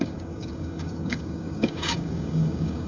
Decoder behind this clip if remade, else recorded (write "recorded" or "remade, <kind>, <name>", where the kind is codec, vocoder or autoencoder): remade, codec, DAC